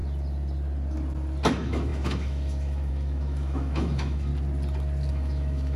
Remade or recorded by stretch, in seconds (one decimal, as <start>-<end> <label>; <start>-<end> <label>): 0.0-1.5 recorded; 1.5-4.3 remade; 4.3-5.1 recorded; 5.1-5.8 remade